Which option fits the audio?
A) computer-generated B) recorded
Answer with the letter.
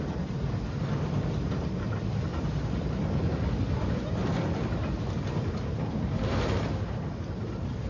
B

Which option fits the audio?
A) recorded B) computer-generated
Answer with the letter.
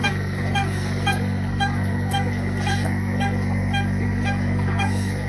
B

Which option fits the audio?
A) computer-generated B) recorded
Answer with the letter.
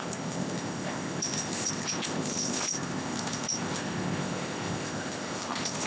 A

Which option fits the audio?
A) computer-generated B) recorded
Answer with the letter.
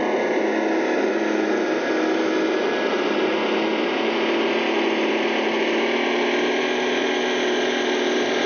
B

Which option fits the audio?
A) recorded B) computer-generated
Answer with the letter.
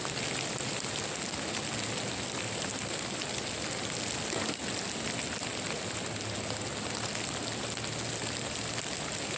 A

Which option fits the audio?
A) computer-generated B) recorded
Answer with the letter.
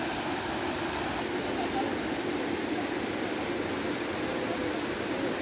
B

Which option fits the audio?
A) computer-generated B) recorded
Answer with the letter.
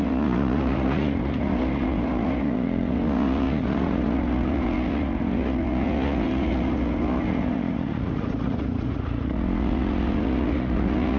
A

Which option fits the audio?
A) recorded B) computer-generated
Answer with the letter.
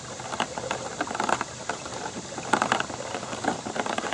A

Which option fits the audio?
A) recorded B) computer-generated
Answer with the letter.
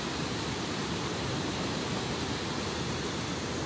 B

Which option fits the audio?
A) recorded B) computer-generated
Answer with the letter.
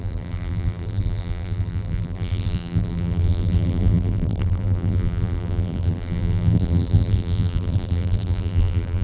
B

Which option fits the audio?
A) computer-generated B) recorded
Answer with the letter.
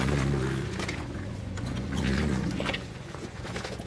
A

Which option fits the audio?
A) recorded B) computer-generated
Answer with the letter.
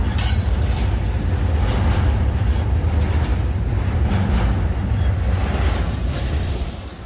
A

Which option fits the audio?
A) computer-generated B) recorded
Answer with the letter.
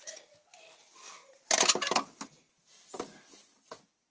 B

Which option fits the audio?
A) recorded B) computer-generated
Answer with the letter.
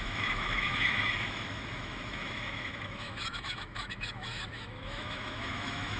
B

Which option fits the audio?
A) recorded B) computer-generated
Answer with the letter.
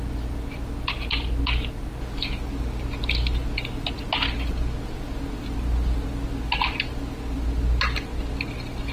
A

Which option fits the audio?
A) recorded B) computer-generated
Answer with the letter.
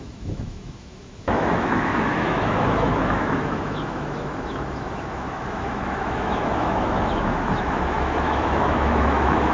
B